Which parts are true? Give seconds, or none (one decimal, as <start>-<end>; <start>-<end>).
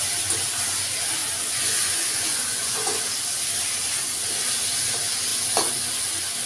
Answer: 0.0-1.2; 3.0-6.5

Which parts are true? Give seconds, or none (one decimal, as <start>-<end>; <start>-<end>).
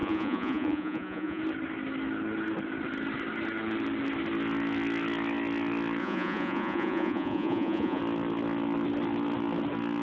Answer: 1.4-6.0; 8.0-10.0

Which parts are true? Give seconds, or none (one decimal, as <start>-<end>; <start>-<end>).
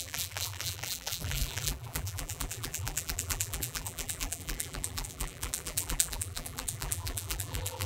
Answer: none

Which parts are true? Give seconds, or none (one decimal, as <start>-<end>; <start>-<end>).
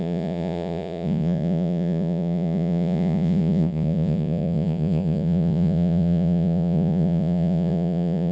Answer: none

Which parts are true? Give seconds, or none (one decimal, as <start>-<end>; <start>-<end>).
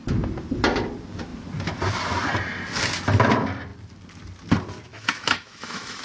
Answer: 0.0-4.9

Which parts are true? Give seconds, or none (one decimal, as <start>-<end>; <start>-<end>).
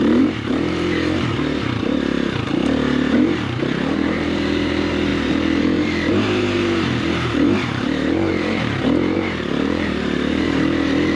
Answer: none